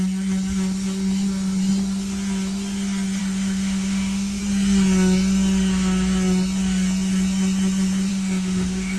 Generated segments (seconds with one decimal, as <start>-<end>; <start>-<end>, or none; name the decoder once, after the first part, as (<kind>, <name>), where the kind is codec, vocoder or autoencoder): 3.2-4.4 (autoencoder, DAC-VAE); 8.1-9.0